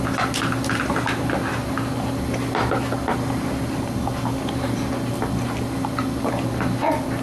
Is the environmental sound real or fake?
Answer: real